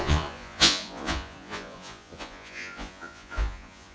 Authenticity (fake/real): fake